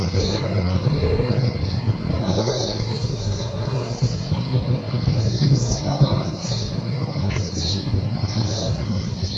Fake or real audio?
fake